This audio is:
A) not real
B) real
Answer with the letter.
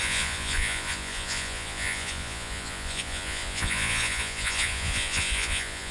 A